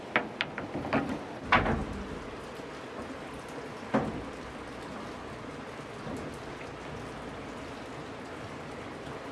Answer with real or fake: real